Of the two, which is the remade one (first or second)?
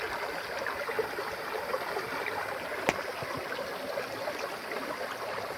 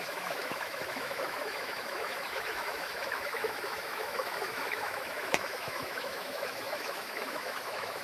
second